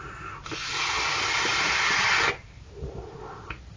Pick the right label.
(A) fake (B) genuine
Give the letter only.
B